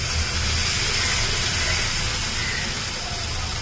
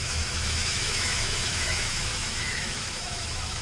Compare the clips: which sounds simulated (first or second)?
second